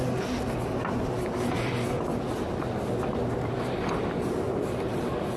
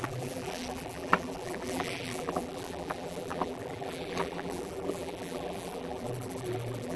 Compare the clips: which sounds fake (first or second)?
second